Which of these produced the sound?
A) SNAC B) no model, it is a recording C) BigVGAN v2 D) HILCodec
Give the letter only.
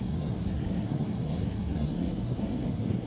A